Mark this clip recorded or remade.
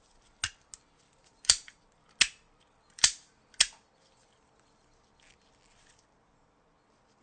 recorded